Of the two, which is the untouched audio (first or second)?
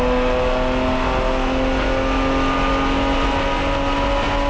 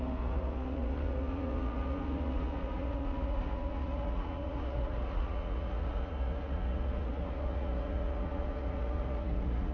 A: first